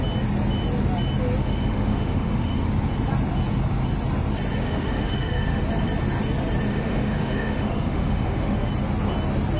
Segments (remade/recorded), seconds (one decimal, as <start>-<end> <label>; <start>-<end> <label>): 0.0-1.4 recorded; 1.4-2.7 remade; 2.7-4.6 recorded; 4.6-5.6 remade; 5.6-6.7 recorded; 6.7-8.7 remade; 8.7-9.6 recorded